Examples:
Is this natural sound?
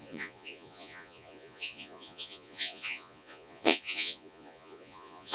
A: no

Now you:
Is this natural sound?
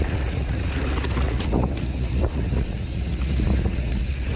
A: no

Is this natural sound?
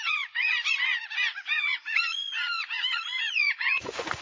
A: no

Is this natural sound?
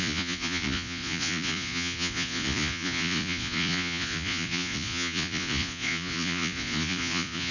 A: no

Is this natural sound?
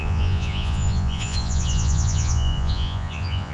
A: no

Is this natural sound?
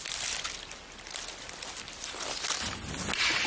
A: yes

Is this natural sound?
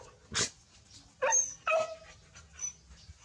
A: yes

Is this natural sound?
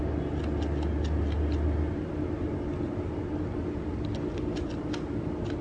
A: yes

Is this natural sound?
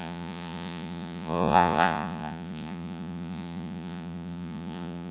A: no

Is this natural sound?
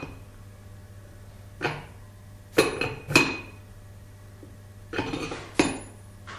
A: yes